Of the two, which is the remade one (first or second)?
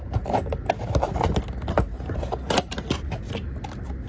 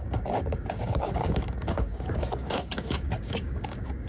second